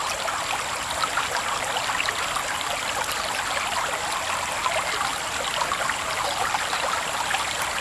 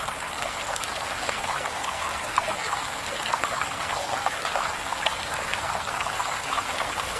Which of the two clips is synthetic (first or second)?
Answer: second